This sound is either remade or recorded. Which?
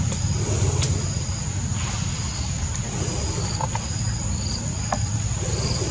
recorded